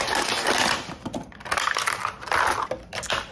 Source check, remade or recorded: recorded